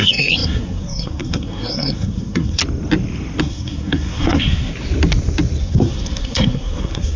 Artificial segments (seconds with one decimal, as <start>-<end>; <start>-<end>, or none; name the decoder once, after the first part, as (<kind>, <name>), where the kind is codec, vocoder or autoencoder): 0.0-2.6 (codec, SNAC); 3.4-4.7; 5.6-7.2